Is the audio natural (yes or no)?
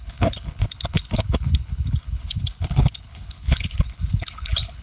no